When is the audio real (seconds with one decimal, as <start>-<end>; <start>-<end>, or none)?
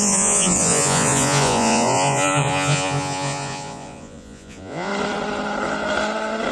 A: 4.9-6.5